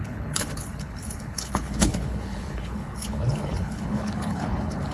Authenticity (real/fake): fake